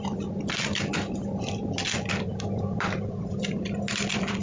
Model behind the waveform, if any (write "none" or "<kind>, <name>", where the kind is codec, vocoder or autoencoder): none